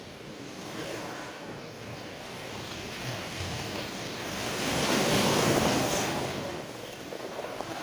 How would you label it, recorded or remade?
remade